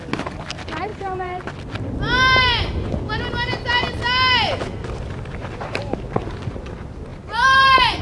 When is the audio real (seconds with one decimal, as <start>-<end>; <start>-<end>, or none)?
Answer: 0.0-0.9; 1.4-5.4; 6.0-7.1